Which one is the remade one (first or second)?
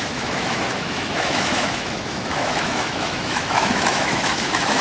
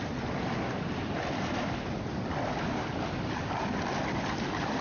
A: first